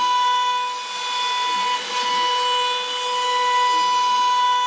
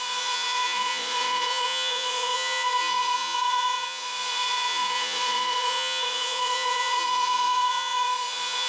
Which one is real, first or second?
first